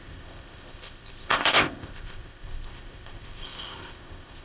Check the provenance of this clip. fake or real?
fake